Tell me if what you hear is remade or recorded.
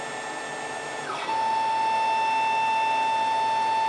recorded